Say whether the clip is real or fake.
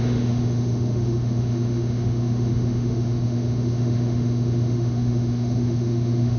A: fake